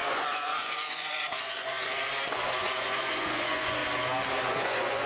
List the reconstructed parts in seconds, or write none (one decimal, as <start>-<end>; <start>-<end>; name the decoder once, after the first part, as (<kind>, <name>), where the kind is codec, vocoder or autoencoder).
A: 0.0-3.8 (vocoder, Vocos); 4.5-5.1